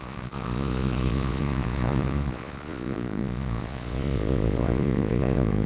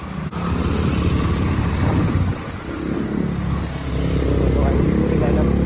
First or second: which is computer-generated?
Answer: first